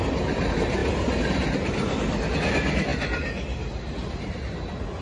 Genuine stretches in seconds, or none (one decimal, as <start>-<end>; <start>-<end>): 0.0-5.0